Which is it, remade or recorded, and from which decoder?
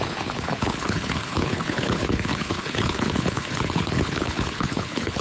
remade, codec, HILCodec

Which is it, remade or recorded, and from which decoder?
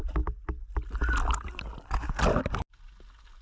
recorded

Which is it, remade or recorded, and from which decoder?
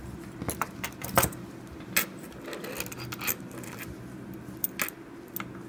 recorded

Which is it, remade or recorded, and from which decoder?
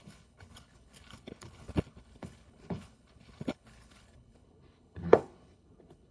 remade, codec, HILCodec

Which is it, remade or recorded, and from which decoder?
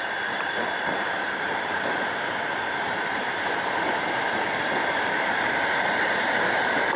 remade, vocoder, BigVGAN v2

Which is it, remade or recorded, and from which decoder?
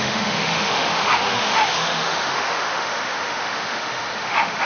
remade, autoencoder, DAC-VAE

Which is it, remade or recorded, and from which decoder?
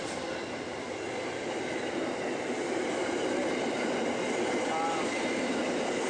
recorded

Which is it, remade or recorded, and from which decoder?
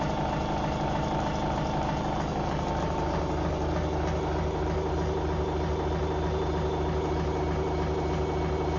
recorded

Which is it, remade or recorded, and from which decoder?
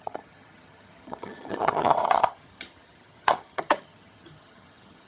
remade, vocoder, HiFi-GAN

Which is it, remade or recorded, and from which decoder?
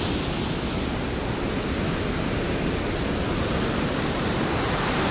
recorded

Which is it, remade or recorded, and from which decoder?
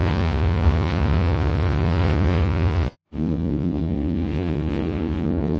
remade, vocoder, Vocos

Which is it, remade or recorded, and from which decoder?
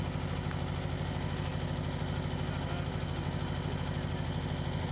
recorded